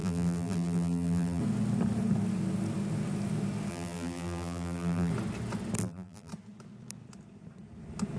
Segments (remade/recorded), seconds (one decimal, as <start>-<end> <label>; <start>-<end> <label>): 0.0-1.4 remade; 1.4-3.7 recorded; 3.7-5.1 remade; 5.1-5.8 recorded; 5.8-6.3 remade; 6.3-8.2 recorded